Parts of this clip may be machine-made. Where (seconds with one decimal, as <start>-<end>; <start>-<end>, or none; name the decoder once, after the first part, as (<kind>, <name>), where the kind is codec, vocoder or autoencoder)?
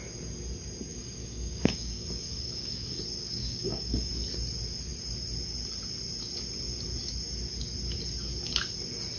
0.9-3.0 (codec, DAC); 3.4-4.1